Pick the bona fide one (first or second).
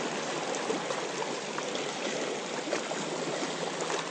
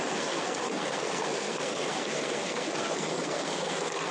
first